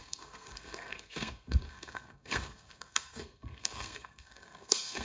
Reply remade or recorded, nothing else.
remade